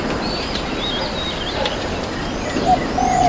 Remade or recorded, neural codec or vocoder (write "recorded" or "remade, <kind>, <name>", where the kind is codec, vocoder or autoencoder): recorded